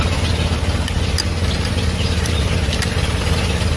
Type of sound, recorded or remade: recorded